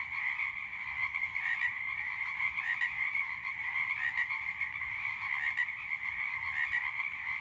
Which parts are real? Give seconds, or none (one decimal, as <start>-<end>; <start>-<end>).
0.0-1.0; 5.3-7.4